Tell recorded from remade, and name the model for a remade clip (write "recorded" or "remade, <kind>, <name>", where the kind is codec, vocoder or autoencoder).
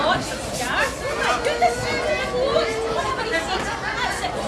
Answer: recorded